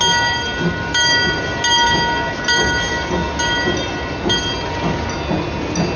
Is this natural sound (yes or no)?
yes